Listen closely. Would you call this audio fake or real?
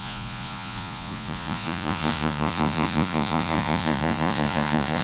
fake